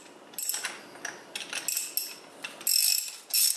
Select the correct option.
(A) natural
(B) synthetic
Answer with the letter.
A